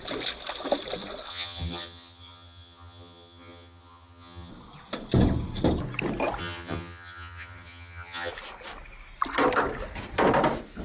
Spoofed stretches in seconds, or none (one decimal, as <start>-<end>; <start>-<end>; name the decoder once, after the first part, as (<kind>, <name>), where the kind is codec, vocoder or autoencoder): 1.3-4.5 (vocoder, HiFi-GAN); 6.4-8.3